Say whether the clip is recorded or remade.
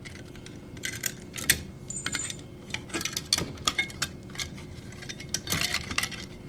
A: recorded